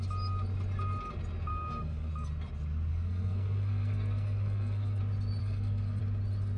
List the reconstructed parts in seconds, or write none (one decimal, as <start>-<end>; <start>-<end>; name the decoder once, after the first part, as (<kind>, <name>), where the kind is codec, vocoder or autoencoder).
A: 1.5-2.1 (codec, SNAC); 2.9-5.0; 5.4-6.0